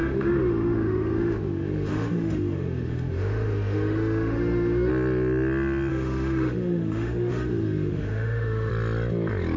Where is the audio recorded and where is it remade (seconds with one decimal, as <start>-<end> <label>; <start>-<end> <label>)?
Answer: 0.0-4.9 remade; 4.9-5.9 recorded; 5.9-8.7 remade; 8.7-9.6 recorded